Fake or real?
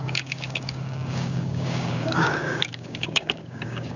fake